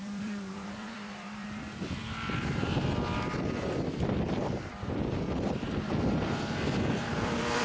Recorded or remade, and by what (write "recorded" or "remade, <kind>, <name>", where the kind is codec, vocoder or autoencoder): remade, vocoder, BigVGAN v2